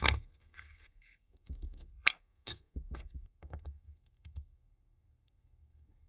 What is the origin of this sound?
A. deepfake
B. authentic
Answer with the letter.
A